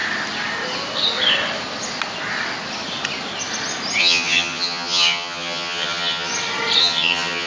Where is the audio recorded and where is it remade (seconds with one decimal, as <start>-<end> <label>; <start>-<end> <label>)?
0.0-4.0 recorded; 4.0-6.3 remade; 6.3-6.8 recorded; 6.8-7.5 remade